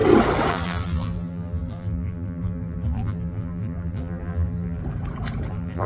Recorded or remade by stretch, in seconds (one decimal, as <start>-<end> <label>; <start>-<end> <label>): 0.0-0.5 recorded; 0.5-4.8 remade; 4.8-5.5 recorded; 5.5-5.9 remade